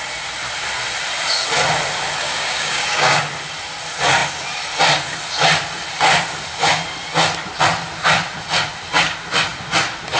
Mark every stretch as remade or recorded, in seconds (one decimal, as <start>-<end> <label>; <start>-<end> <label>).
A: 0.0-2.2 recorded; 2.2-3.2 remade; 3.2-10.2 recorded